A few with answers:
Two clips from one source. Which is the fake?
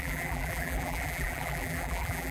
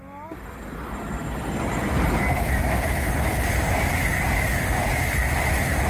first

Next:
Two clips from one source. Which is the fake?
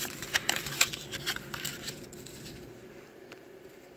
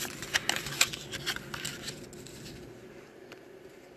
first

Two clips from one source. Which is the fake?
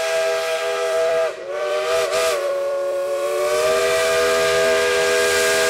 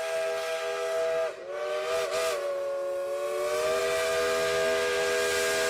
first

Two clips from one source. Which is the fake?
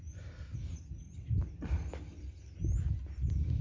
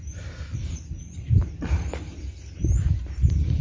second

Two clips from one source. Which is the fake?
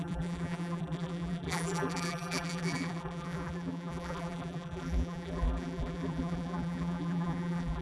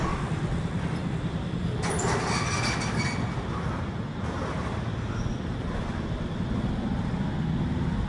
first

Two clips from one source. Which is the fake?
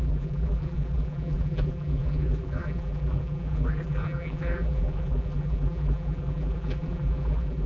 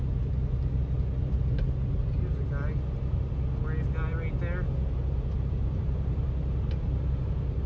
first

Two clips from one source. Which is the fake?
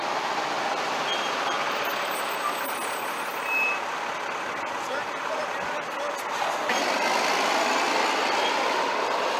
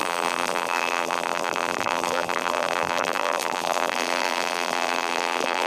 second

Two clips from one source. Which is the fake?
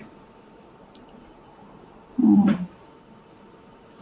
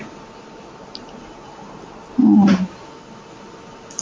first